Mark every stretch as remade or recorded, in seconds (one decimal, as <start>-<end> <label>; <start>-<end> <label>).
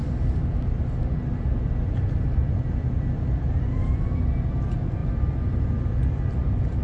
0.0-2.4 recorded; 2.4-4.2 remade; 4.2-5.0 recorded; 5.0-6.8 remade